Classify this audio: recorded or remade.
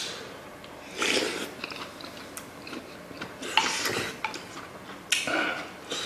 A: recorded